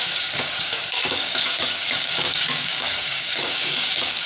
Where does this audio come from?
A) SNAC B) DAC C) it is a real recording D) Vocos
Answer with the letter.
B